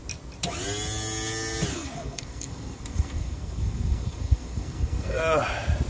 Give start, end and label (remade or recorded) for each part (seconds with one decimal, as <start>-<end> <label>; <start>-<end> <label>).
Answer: 0.0-1.7 recorded; 1.7-5.2 remade; 5.2-5.9 recorded